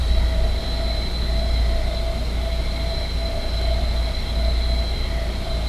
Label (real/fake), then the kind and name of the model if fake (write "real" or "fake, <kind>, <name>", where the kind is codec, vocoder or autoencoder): real